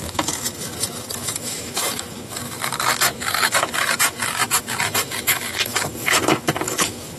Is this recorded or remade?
remade